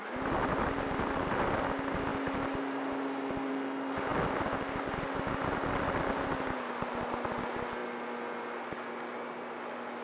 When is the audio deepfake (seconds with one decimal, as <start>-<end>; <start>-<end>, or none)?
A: none